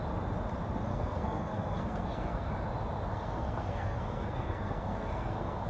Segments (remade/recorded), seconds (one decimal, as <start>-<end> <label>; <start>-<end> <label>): 0.0-0.9 recorded; 0.9-2.5 remade; 2.5-3.1 recorded; 3.1-5.7 remade